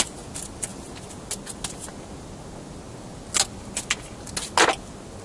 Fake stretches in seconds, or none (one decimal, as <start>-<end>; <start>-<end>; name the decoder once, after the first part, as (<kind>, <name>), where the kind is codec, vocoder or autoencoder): none